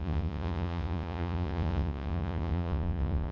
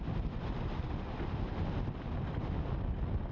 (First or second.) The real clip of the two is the second